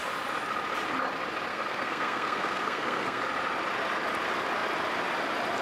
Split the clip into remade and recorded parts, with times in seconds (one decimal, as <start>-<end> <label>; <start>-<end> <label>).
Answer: 0.0-1.5 recorded; 1.5-3.2 remade; 3.2-5.6 recorded